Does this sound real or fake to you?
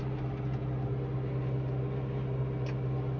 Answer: real